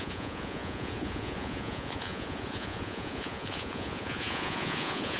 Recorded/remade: remade